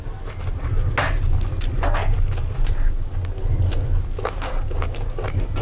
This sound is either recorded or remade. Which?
recorded